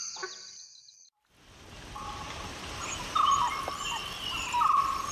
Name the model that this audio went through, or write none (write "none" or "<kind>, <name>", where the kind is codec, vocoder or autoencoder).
none